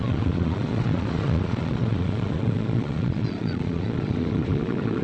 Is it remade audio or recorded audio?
remade